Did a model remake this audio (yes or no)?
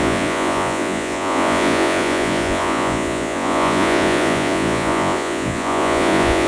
yes